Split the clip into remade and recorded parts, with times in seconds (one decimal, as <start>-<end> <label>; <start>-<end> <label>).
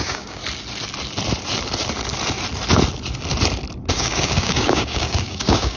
0.0-0.4 remade; 0.4-3.9 recorded; 3.9-5.8 remade